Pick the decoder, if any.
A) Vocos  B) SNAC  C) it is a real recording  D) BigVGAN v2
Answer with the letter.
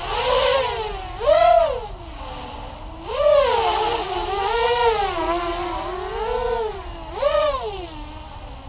C